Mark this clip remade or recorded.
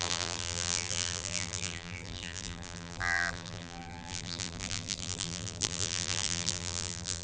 remade